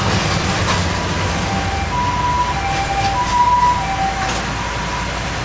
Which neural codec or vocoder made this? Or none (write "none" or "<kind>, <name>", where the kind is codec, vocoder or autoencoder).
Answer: none